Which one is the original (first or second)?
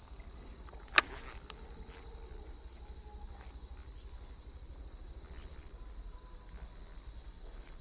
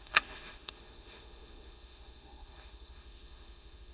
first